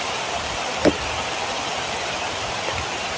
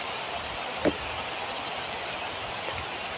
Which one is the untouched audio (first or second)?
second